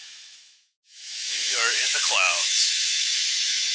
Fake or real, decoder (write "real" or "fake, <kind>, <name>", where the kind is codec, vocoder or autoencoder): fake, autoencoder, DAC-VAE